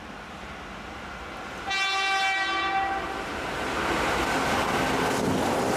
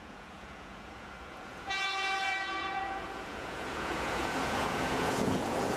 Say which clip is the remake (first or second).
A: second